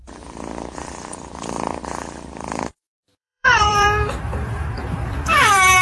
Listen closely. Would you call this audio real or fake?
fake